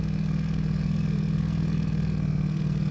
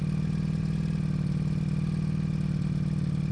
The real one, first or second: second